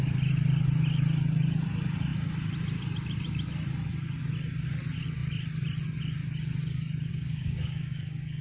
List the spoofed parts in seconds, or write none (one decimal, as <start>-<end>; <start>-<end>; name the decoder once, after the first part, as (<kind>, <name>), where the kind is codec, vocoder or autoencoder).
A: 7.1-8.4 (codec, DAC)